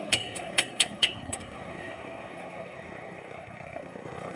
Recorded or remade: remade